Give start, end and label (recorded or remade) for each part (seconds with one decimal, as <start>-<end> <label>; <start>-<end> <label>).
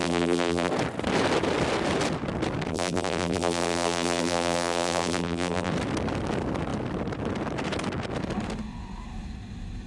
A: 0.0-0.7 remade; 0.7-2.7 recorded; 2.7-5.7 remade; 5.7-9.9 recorded